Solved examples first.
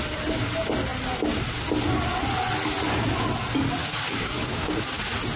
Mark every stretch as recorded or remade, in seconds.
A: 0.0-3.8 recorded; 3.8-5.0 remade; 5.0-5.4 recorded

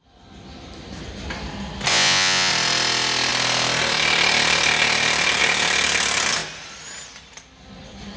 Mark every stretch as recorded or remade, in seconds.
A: 0.0-1.9 recorded; 1.9-2.5 remade; 2.5-8.2 recorded